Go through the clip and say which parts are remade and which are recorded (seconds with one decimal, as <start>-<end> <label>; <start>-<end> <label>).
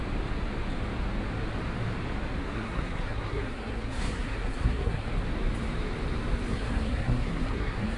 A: 0.0-2.4 recorded; 2.4-5.1 remade; 5.1-6.5 recorded; 6.5-8.0 remade